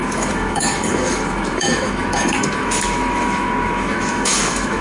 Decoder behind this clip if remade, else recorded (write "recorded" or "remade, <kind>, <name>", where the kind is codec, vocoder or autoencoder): remade, autoencoder, DAC-VAE